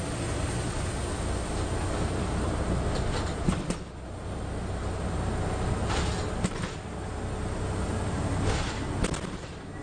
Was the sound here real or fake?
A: real